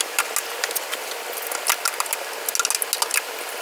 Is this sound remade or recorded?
recorded